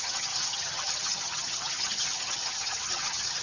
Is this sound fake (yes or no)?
yes